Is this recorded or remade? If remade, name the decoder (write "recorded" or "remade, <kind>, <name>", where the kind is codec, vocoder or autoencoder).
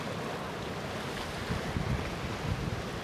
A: recorded